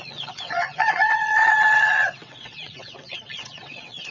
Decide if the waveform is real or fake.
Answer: fake